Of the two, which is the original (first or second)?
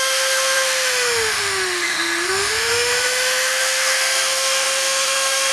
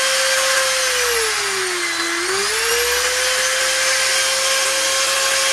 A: second